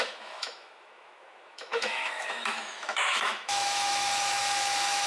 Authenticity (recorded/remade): remade